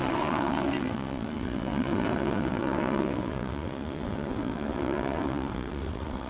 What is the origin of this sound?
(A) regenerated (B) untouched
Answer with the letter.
A